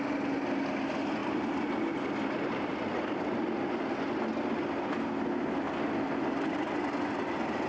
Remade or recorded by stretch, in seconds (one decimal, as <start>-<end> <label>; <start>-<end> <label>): 0.0-7.7 recorded